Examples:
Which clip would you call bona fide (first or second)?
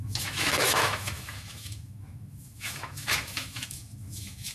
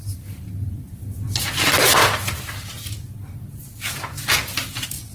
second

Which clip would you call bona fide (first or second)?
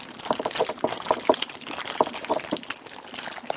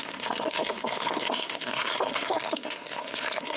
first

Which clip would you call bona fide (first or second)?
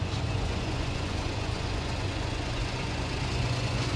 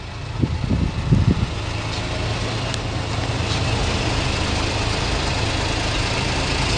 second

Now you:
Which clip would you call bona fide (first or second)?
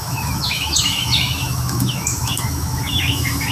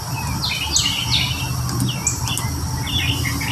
second